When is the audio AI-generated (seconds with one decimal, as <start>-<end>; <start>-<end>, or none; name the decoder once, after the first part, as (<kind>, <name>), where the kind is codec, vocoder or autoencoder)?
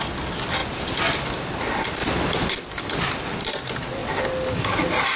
0.6-1.6 (vocoder, BigVGAN v2); 2.0-2.5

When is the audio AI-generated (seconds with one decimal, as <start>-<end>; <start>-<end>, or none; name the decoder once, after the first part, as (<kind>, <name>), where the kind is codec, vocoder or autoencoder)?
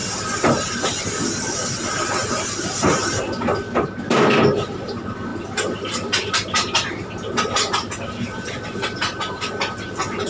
0.0-0.8 (vocoder, BigVGAN v2); 5.3-6.9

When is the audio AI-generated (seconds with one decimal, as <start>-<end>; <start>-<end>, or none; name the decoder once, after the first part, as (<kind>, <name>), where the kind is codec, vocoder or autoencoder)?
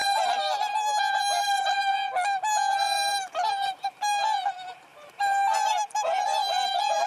2.7-4.2 (vocoder, BigVGAN v2); 4.9-6.5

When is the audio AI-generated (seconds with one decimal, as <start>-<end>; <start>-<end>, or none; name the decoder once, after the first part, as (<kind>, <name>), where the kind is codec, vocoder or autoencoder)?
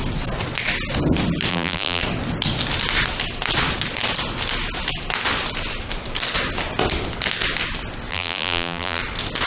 1.5-2.0 (vocoder, BigVGAN v2); 8.1-9.0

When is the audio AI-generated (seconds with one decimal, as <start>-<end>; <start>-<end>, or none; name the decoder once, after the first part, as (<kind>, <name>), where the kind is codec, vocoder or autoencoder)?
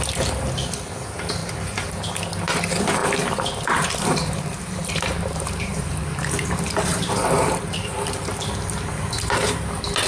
1.4-2.1 (vocoder, BigVGAN v2); 3.0-8.0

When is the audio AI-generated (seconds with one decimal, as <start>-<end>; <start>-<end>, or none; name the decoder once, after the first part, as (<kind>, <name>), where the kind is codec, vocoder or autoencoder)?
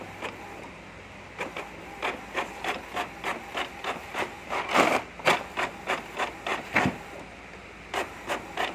6.5-7.2 (vocoder, BigVGAN v2)